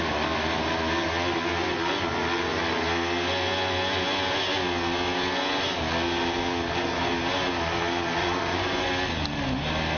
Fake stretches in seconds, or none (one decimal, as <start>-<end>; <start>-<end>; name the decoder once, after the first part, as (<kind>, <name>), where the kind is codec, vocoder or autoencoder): 8.2-8.9 (vocoder, Vocos)